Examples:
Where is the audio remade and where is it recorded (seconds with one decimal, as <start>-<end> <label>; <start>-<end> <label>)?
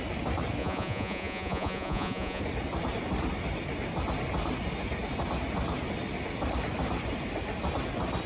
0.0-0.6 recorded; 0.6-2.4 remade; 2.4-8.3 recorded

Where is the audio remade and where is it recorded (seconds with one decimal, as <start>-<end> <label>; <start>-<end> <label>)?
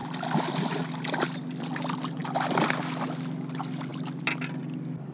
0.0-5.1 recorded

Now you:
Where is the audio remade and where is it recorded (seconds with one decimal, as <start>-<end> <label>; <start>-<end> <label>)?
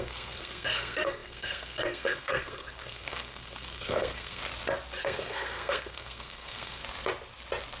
0.0-4.4 remade; 4.4-5.0 recorded; 5.0-6.8 remade; 6.8-7.8 recorded